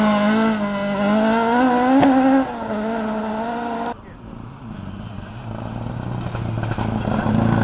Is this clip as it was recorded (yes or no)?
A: yes